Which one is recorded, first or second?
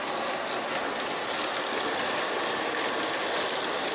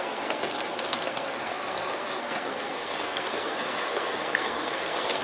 first